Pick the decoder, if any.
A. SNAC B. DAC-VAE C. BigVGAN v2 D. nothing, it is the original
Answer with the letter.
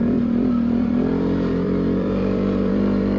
C